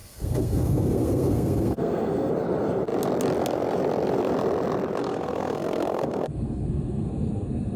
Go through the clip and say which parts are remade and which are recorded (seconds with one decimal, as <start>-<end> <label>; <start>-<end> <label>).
0.0-2.3 remade; 2.3-5.0 recorded; 5.0-7.8 remade